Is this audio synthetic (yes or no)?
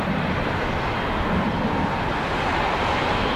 no